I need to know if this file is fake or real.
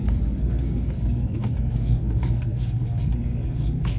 fake